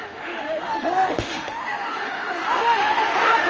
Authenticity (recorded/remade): remade